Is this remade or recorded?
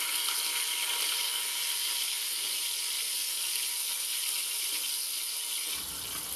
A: recorded